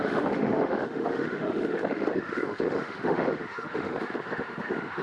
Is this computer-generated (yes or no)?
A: yes